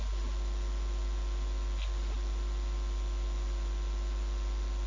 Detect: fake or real real